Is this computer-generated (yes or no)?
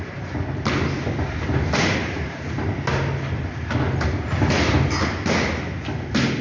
no